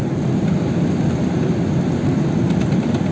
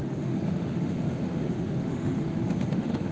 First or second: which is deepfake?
second